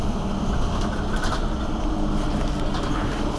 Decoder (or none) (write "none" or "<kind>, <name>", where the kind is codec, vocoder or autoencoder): vocoder, BigVGAN v2